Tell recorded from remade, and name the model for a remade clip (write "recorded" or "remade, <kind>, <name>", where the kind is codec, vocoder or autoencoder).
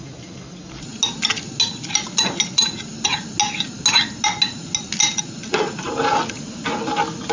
recorded